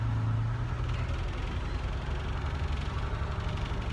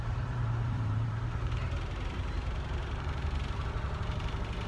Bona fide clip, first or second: first